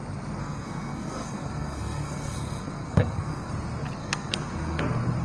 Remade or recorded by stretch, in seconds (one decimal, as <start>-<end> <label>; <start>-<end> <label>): 0.0-0.4 recorded; 0.4-3.5 remade; 3.5-4.0 recorded; 4.0-4.8 remade; 4.8-5.2 recorded